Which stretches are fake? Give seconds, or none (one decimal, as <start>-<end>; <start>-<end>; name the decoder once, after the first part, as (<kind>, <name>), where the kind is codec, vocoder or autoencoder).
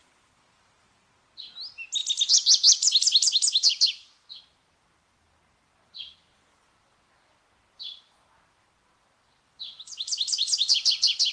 none